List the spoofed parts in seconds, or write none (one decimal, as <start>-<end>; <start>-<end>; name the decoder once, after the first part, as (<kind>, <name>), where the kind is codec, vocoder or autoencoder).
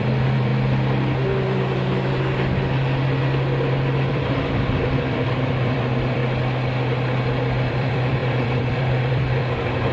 0.0-0.5 (vocoder, BigVGAN v2); 4.1-6.2; 7.7-9.9